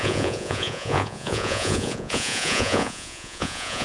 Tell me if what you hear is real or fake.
fake